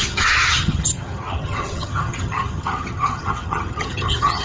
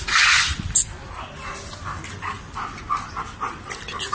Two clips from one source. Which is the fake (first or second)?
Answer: first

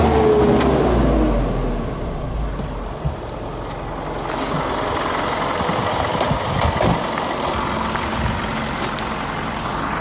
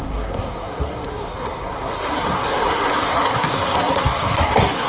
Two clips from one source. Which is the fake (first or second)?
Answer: second